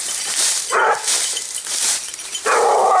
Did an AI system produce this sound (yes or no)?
yes